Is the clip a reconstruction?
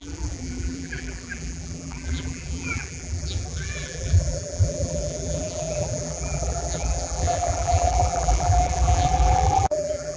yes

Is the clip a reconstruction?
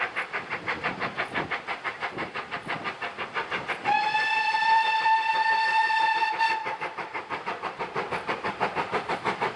yes